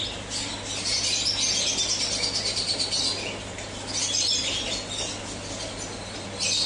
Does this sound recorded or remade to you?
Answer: recorded